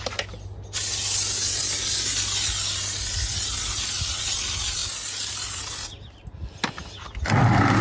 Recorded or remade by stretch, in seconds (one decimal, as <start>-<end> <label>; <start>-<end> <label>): 0.0-7.8 recorded